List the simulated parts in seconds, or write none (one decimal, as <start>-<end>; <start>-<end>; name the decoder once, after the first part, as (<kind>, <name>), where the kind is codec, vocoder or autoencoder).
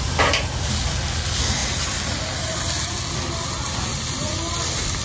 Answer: none